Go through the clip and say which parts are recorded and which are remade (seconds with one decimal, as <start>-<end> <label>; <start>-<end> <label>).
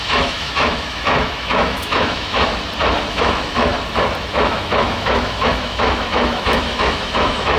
0.0-2.5 remade; 2.5-3.1 recorded; 3.1-3.7 remade; 3.7-4.2 recorded; 4.2-7.6 remade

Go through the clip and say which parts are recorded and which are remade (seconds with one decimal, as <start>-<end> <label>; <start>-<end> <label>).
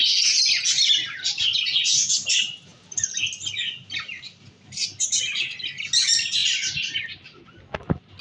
0.0-8.2 recorded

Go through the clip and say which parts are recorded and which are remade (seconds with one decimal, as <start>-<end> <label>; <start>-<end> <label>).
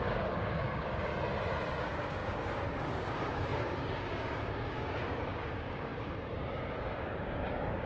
0.0-1.1 remade; 1.1-1.8 recorded; 1.8-7.9 remade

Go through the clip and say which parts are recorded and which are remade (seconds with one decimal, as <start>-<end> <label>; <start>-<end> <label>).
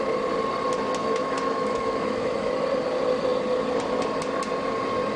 0.0-1.0 recorded; 1.0-2.5 remade; 2.5-5.2 recorded